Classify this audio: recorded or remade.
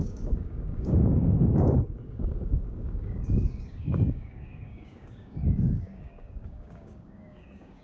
remade